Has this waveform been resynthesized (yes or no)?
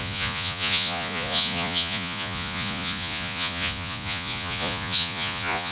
yes